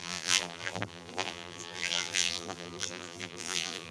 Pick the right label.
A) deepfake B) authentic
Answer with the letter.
A